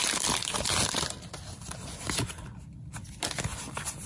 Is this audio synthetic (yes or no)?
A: no